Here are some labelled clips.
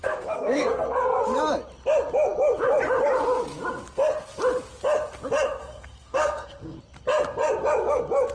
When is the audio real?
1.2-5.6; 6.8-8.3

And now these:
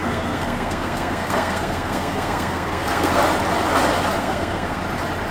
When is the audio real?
3.2-4.2; 4.8-5.3

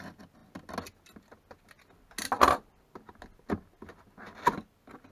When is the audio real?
0.0-5.1

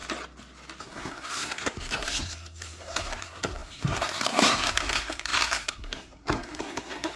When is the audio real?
0.0-0.8

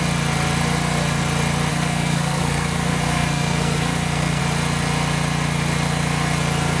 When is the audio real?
0.0-1.7; 4.4-6.8

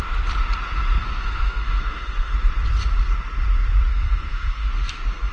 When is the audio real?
0.0-1.0; 2.3-3.9

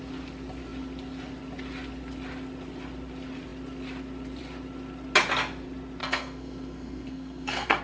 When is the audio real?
0.0-6.0